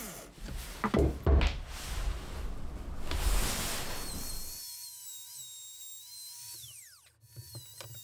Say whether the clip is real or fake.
real